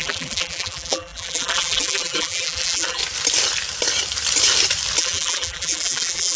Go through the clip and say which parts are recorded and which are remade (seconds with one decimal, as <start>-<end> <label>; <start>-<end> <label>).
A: 0.0-3.0 remade; 3.0-5.0 recorded; 5.0-6.4 remade